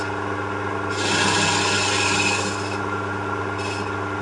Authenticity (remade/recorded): recorded